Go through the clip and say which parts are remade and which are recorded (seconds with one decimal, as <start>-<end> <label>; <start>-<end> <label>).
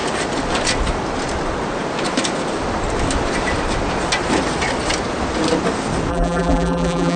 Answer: 0.0-6.1 recorded; 6.1-7.2 remade